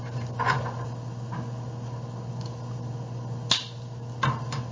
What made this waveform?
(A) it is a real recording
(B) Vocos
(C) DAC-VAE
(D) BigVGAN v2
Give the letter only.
A